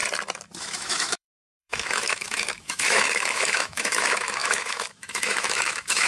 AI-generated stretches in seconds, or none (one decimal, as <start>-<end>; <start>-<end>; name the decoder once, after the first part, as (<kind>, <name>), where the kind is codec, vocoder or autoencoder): 0.6-6.1 (autoencoder, DAC-VAE)